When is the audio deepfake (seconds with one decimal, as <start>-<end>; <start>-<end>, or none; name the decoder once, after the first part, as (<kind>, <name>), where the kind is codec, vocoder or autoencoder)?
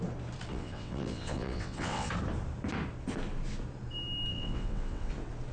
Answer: 0.5-2.1 (vocoder, WaveNeXt); 4.3-5.1